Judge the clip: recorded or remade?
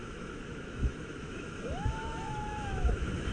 remade